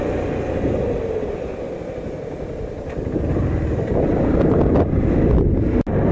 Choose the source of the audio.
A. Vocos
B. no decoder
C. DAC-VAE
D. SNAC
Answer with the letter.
B